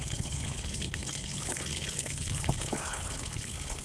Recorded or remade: remade